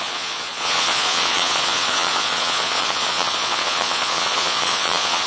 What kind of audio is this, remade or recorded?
remade